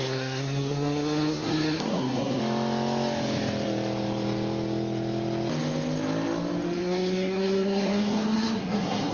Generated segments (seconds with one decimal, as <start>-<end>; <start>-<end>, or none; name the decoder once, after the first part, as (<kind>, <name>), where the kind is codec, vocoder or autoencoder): 0.0-2.4 (codec, SNAC); 6.8-9.1